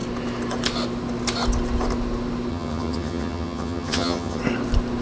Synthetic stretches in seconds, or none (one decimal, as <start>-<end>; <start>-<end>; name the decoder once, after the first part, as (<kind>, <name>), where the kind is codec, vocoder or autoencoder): 2.5-4.4 (vocoder, HiFi-GAN)